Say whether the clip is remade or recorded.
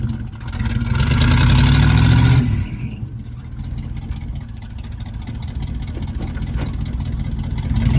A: recorded